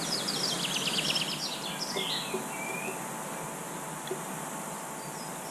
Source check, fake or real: real